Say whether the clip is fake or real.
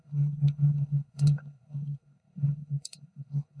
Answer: fake